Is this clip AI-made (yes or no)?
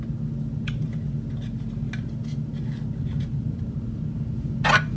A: no